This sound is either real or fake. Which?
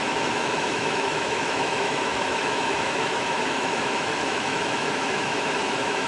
fake